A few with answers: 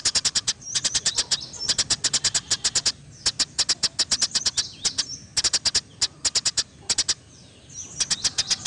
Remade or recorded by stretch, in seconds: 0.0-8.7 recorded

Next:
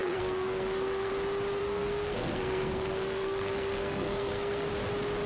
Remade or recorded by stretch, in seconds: 0.0-1.1 remade; 1.1-1.6 recorded; 1.6-4.7 remade; 4.7-5.3 recorded

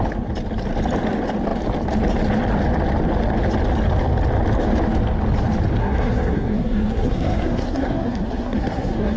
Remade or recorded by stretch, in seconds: 0.0-5.8 recorded; 5.8-9.2 remade

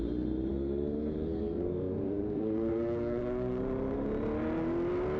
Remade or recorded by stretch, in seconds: 0.0-0.5 recorded; 0.5-3.6 remade; 3.6-5.2 recorded

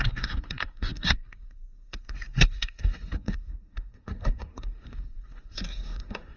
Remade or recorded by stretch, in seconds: 0.0-6.4 remade